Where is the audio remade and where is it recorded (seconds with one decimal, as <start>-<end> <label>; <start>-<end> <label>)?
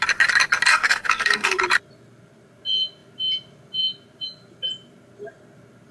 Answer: 0.0-0.7 recorded; 0.7-1.6 remade; 1.6-5.9 recorded